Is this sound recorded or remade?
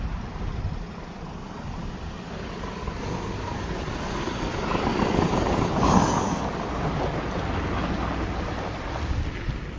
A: recorded